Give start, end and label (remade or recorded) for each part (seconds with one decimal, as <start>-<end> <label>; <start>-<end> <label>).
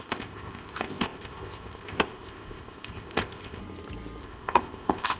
0.0-3.6 remade; 3.6-4.2 recorded; 4.2-5.2 remade